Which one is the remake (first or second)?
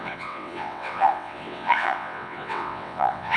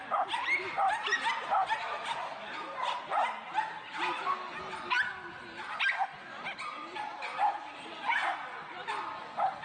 first